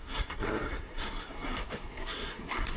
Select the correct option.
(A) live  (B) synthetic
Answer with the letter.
B